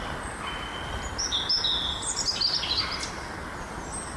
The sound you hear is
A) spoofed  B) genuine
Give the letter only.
B